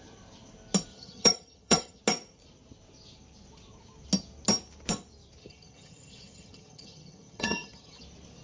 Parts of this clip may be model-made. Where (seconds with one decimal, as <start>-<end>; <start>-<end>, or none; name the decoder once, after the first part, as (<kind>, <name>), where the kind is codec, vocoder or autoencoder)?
0.9-2.0 (vocoder, HiFi-GAN); 5.4-8.0